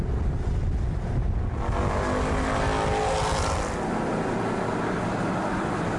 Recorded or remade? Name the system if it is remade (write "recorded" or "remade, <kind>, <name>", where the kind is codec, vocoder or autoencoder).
recorded